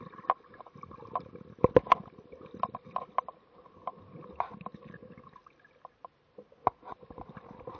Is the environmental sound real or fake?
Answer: real